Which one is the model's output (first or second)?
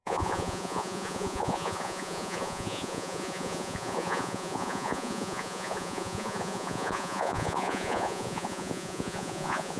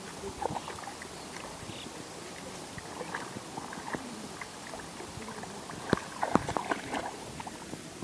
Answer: first